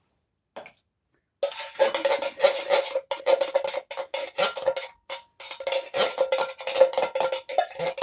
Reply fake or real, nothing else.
real